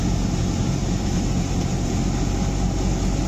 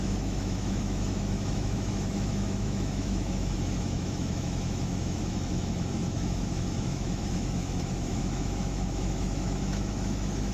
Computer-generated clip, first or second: second